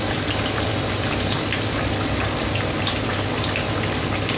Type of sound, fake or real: fake